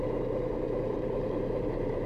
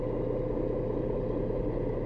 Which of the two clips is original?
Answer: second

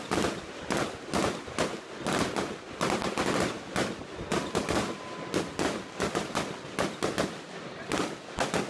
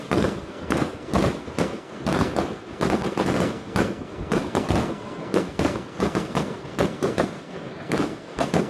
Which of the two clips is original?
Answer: first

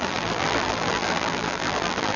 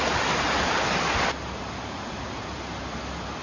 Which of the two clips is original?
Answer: second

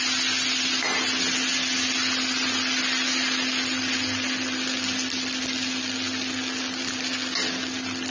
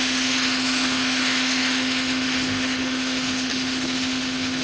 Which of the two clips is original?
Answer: first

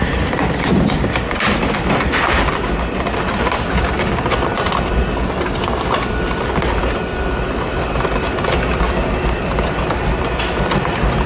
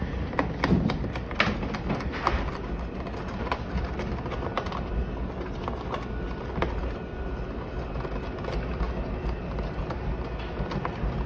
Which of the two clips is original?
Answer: second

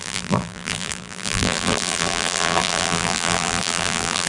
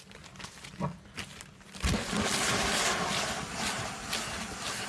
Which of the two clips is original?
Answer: second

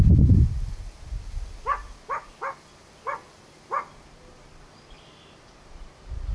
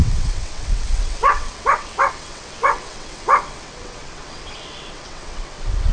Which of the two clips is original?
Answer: first